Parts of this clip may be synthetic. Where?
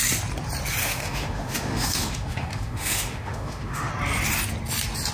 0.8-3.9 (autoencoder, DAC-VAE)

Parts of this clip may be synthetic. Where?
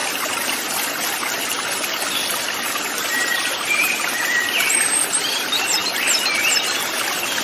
0.0-5.8 (vocoder, BigVGAN v2); 6.4-7.4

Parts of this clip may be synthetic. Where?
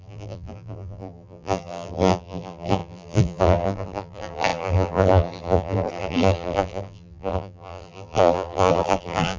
0.0-9.4 (vocoder, BigVGAN v2)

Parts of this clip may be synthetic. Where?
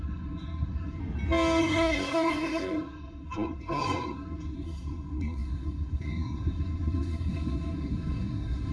0.0-1.0 (codec, SNAC); 1.6-8.7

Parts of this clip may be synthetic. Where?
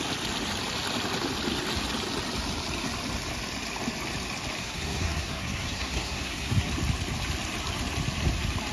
4.6-6.7 (codec, SNAC)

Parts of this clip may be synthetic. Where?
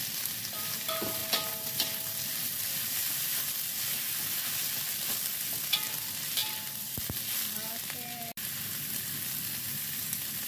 none